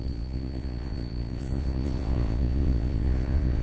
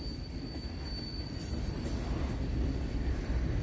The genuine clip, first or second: second